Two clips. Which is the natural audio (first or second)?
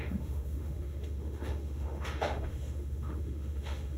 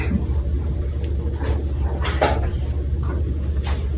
second